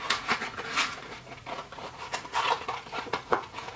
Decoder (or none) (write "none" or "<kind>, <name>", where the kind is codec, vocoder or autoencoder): vocoder, Vocos